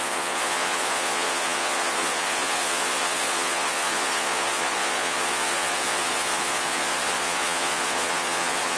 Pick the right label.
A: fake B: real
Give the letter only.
A